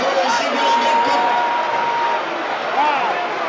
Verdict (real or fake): real